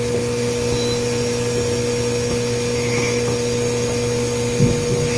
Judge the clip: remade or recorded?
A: recorded